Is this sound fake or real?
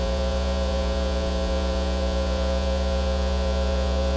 fake